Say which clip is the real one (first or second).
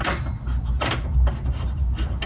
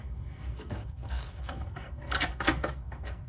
first